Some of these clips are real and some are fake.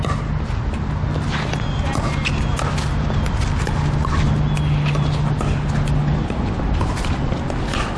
real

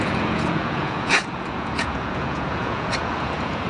fake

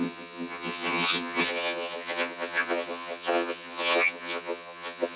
fake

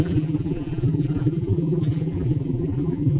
fake